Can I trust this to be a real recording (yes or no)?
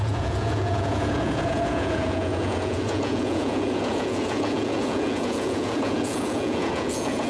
no